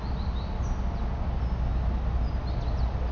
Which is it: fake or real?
real